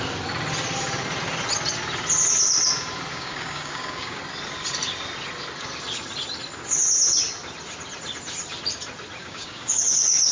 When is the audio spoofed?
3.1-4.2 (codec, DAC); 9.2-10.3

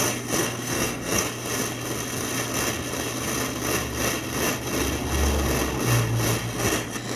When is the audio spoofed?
0.4-1.2 (codec, SNAC)

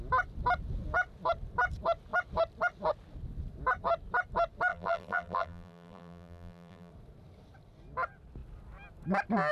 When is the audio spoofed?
4.7-6.9 (vocoder, BigVGAN v2)

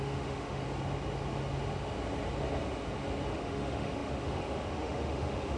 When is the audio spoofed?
0.0-0.6 (autoencoder, DAC-VAE); 3.3-5.6

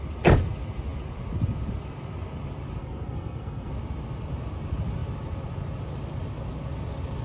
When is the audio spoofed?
2.8-3.7 (codec, SNAC)